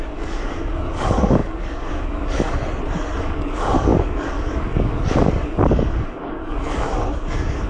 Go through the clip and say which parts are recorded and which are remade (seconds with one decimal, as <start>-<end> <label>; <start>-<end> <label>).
0.0-2.6 remade; 2.6-3.2 recorded; 3.2-7.7 remade